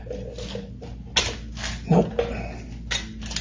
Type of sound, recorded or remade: recorded